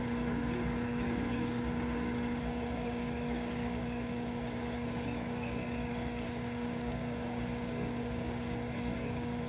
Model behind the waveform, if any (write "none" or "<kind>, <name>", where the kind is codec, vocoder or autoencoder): codec, DAC